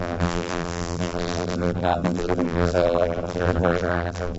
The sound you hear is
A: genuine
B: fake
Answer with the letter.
B